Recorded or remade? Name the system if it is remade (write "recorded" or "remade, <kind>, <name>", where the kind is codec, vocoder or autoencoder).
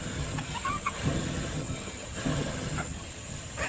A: remade, vocoder, HiFi-GAN